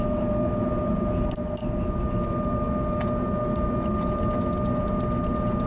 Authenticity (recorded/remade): recorded